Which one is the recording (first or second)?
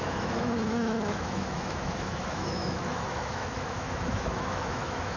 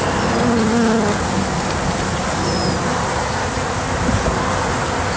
second